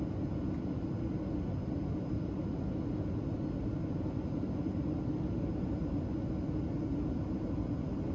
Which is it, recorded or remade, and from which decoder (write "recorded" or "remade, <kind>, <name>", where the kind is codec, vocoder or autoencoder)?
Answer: recorded